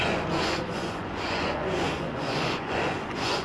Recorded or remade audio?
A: remade